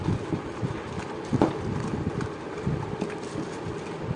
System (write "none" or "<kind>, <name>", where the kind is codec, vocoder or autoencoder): none